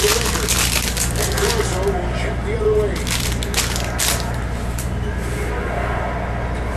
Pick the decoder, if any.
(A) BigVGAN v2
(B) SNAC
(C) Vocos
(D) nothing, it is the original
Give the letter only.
D